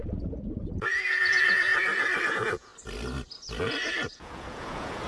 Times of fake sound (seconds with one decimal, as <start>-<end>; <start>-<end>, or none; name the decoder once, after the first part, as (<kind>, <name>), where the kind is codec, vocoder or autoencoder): 0.0-1.7 (vocoder, Vocos); 2.3-2.7; 4.1-5.1